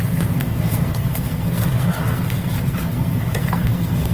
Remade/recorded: remade